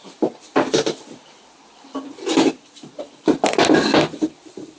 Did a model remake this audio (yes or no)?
no